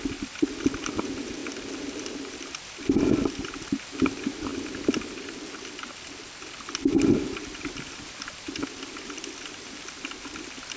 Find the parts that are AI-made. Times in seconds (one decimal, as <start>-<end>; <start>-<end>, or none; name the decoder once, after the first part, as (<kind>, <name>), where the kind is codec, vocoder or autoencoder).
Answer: none